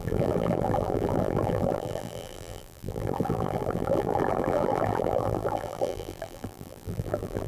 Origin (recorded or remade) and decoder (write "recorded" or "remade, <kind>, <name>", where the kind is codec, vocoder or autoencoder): remade, vocoder, BigVGAN v2